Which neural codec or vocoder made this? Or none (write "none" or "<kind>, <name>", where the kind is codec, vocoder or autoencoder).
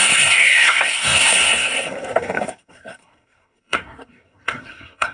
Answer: codec, SNAC